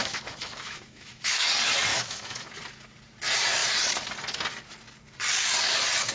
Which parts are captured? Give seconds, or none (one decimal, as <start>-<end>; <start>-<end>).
1.5-1.9; 2.5-6.1